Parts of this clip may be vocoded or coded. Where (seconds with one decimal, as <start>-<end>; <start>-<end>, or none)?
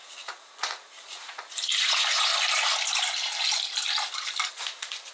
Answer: 0.0-2.3; 4.5-5.1